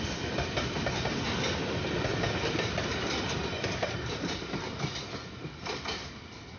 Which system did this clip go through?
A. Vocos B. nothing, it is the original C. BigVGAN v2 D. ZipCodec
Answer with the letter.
B